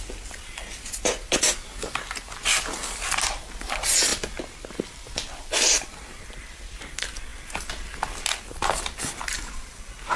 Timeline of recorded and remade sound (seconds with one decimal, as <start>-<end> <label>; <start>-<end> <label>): 0.0-10.2 recorded